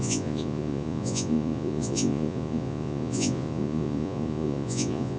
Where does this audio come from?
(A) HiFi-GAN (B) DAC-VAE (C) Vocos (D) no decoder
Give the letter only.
C